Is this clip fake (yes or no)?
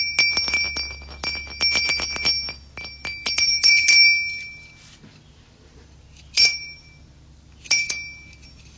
no